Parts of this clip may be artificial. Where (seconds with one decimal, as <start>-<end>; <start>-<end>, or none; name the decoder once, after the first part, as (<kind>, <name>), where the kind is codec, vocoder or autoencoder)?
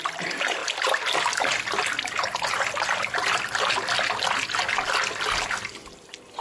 none